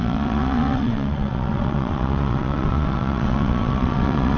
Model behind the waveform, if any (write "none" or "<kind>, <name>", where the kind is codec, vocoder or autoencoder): vocoder, WaveNeXt